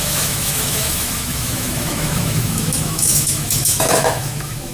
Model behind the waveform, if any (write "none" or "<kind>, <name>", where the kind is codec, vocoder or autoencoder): autoencoder, DAC-VAE